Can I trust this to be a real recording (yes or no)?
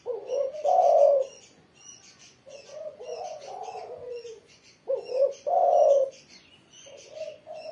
no